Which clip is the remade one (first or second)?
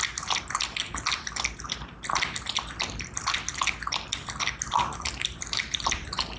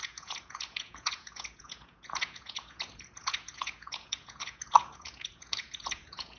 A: second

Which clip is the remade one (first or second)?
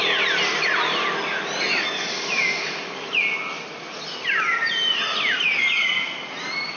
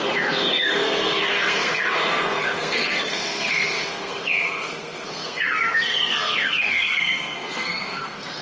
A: second